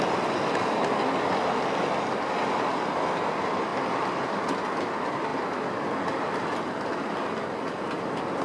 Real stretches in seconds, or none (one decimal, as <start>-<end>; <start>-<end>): 0.0-8.4